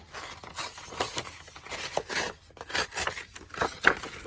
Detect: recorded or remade recorded